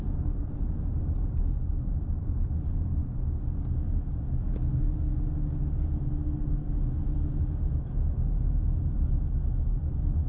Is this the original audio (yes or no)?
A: yes